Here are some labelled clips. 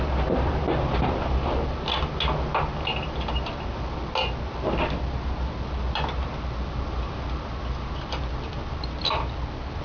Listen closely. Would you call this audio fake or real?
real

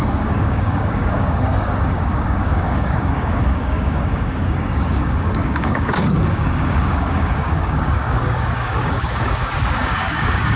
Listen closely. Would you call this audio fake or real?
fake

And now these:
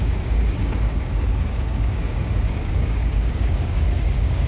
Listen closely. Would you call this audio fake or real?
fake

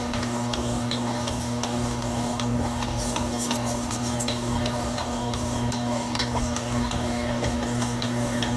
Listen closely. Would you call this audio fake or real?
fake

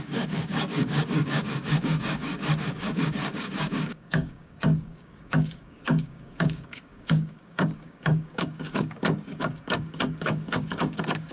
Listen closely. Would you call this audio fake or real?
fake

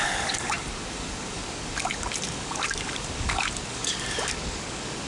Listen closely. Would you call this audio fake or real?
fake